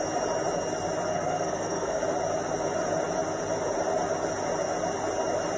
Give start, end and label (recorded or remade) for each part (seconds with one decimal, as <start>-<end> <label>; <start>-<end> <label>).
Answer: 0.0-1.1 recorded; 1.1-2.0 remade; 2.0-5.6 recorded